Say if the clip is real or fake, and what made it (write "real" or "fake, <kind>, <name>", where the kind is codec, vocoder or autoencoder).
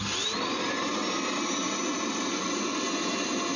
real